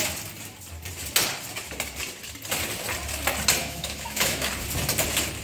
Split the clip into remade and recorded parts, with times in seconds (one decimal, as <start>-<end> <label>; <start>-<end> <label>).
0.0-3.6 recorded; 3.6-4.5 remade; 4.5-5.4 recorded